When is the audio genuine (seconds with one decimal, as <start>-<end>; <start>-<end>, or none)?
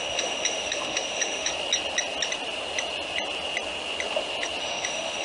1.5-4.6